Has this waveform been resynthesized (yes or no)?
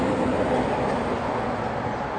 no